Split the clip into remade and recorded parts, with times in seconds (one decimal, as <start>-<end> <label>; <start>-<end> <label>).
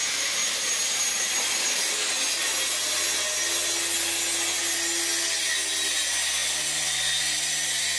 0.0-8.0 recorded